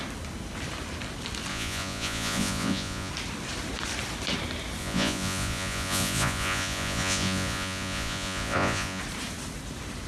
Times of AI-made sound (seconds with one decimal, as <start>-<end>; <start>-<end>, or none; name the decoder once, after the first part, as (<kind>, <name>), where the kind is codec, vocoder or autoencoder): 1.5-3.1 (vocoder, Vocos); 4.8-9.0